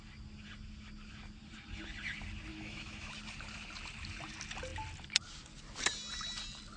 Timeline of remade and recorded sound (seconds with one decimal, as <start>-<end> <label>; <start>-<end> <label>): 0.0-2.5 recorded; 2.5-3.1 remade; 3.1-6.8 recorded